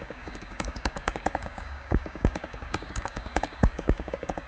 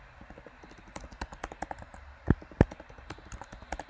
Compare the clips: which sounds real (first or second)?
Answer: second